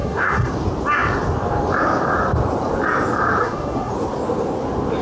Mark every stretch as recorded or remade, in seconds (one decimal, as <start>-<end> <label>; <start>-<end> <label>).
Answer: 0.0-0.5 remade; 0.5-3.4 recorded; 3.4-3.9 remade; 3.9-5.0 recorded